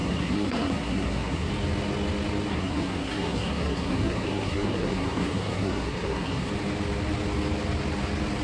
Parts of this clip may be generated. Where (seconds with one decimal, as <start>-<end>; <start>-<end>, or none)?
0.0-1.5; 2.5-6.5